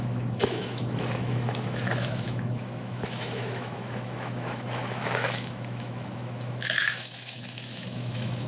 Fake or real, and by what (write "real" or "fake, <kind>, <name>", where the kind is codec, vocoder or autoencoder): fake, autoencoder, DAC-VAE